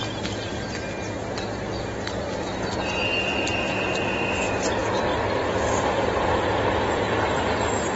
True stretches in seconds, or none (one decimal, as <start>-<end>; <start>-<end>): 0.0-8.0